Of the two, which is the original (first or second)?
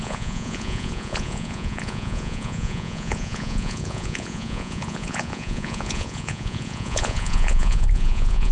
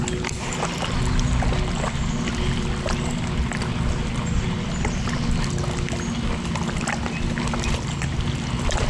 second